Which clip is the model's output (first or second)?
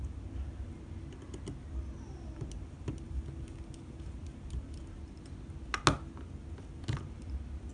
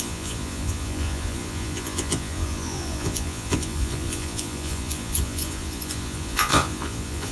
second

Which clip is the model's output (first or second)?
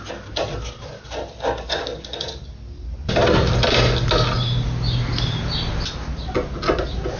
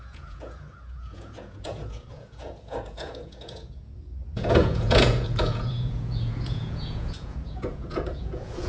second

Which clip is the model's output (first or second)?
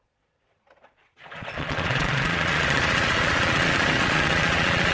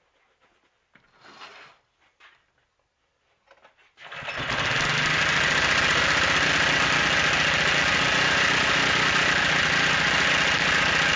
first